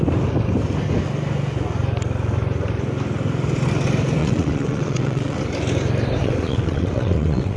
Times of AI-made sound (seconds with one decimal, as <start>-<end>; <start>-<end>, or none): 4.2-5.4; 6.2-7.6